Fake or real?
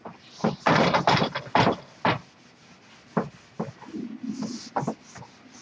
real